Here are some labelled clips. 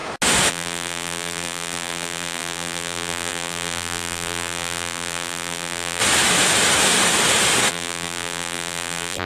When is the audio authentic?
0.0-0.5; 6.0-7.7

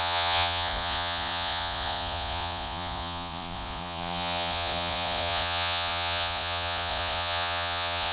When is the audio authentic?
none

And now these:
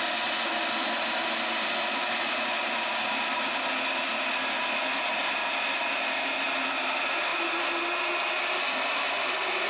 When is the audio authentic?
0.0-9.7

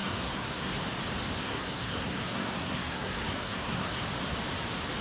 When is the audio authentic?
0.8-1.4; 4.0-5.0

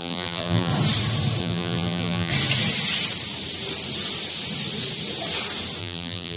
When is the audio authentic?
0.7-1.4; 2.3-5.8